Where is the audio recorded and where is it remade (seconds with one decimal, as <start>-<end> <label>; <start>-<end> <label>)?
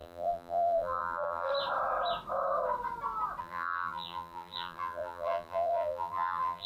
0.0-1.5 remade; 1.5-3.4 recorded; 3.4-6.7 remade